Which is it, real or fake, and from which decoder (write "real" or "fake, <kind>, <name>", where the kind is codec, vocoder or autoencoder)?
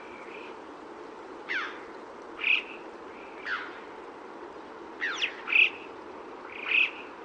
real